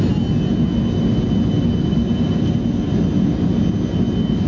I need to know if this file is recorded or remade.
recorded